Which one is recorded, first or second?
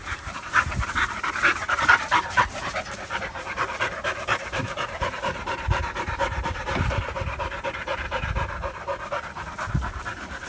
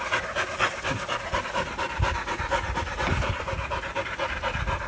second